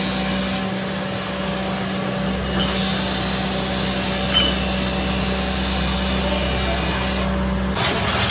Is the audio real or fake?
real